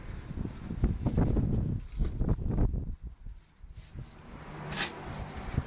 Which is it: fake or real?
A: real